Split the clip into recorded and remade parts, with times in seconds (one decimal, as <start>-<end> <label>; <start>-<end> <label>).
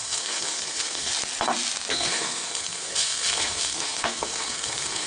0.0-1.1 remade; 1.1-1.9 recorded; 1.9-5.1 remade